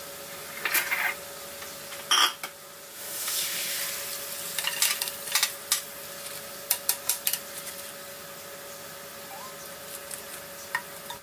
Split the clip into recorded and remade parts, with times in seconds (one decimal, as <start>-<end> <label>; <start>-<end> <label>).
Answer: 0.0-2.9 recorded; 2.9-3.8 remade; 3.8-11.2 recorded